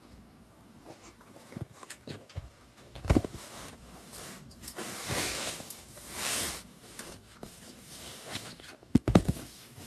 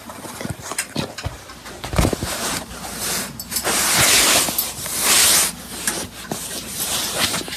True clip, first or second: second